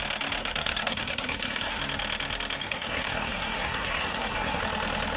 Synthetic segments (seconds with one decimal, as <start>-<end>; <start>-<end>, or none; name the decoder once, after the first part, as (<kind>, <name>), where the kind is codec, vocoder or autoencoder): 0.4-1.8 (codec, SNAC); 2.6-4.6